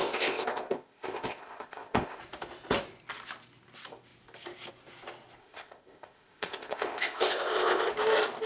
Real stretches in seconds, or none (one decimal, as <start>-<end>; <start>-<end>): 2.2-5.4; 7.9-8.5